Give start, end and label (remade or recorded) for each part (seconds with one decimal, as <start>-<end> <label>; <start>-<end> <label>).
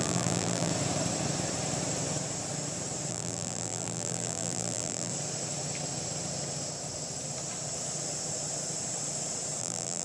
0.0-0.7 remade; 0.7-3.1 recorded; 3.1-5.1 remade; 5.1-9.6 recorded; 9.6-10.0 remade